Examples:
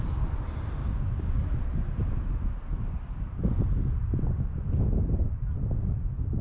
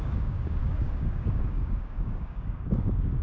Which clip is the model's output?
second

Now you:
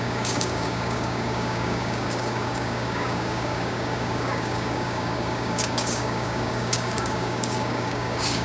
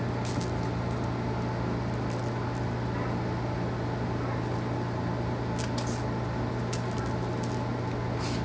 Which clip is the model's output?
first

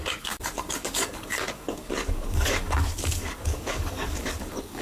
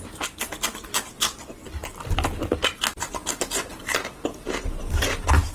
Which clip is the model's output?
first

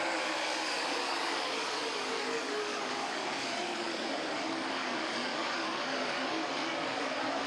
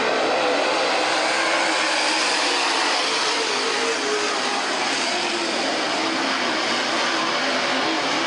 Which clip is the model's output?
first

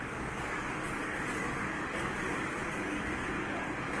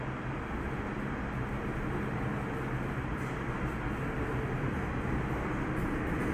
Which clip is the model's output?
first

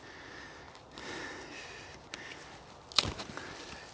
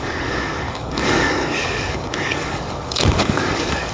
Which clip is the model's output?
second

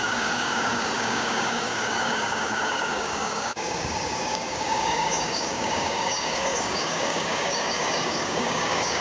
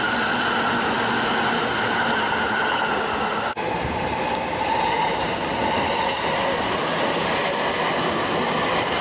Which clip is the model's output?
first